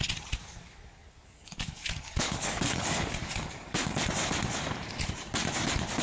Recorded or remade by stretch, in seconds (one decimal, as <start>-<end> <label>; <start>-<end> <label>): 0.0-0.4 recorded; 0.4-4.0 remade; 4.0-6.0 recorded

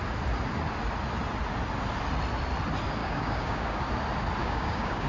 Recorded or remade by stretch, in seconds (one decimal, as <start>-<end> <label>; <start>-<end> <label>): 0.0-3.0 recorded; 3.0-3.9 remade; 3.9-4.4 recorded; 4.4-5.1 remade